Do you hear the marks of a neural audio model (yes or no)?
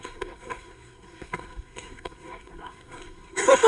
yes